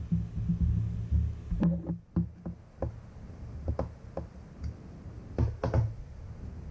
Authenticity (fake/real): real